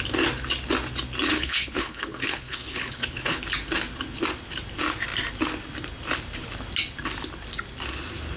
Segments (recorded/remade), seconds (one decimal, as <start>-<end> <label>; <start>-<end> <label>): 0.0-1.3 recorded; 1.3-3.4 remade; 3.4-8.4 recorded